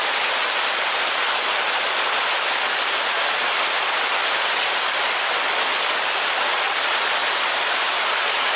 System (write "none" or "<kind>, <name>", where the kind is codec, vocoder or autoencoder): none